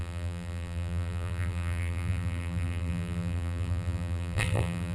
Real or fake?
fake